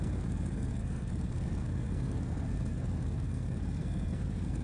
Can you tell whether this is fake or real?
fake